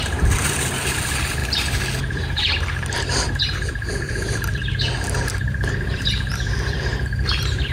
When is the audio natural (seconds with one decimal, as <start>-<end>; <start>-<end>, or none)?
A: 1.4-2.0